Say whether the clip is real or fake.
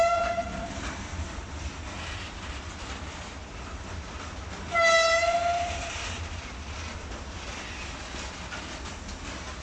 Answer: real